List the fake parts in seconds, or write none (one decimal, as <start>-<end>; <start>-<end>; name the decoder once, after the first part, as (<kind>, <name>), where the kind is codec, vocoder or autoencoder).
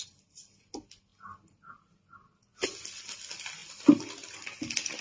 none